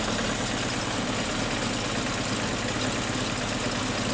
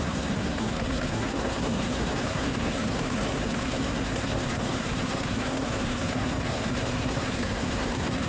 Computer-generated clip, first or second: second